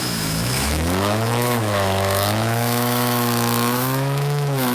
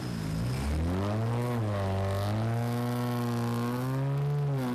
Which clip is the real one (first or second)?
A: second